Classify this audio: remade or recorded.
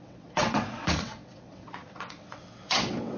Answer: remade